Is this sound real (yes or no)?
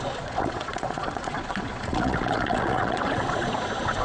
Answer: no